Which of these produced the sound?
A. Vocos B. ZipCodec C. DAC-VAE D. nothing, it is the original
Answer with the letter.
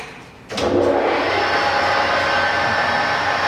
D